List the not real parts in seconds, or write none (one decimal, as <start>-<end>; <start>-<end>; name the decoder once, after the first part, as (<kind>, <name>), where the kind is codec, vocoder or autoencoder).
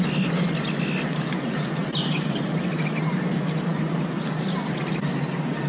none